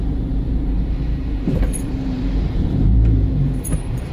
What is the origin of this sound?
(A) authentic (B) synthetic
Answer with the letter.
B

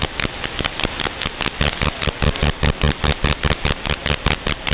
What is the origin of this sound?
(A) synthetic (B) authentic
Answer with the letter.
A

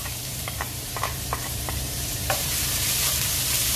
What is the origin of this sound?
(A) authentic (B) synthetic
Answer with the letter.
B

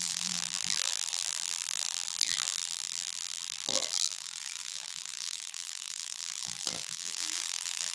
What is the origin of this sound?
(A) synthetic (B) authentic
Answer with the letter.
A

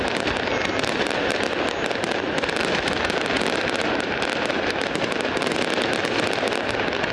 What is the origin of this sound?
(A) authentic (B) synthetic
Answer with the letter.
A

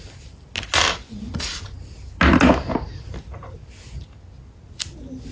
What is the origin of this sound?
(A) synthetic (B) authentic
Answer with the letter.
B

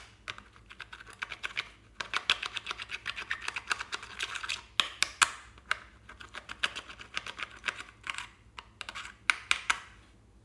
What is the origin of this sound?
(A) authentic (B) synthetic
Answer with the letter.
A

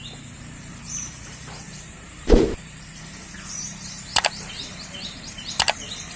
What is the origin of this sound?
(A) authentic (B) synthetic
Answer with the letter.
B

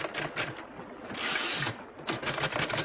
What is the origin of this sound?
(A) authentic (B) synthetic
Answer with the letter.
A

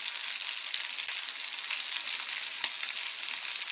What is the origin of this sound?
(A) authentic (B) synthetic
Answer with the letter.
A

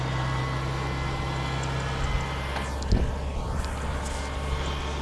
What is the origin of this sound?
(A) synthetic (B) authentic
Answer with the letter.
B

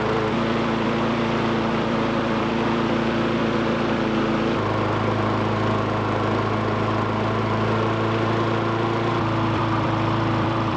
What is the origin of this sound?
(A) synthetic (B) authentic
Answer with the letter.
A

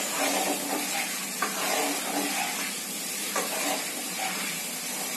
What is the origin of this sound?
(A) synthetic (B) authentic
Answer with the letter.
A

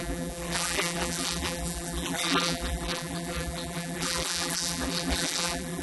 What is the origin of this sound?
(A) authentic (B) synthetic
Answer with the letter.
B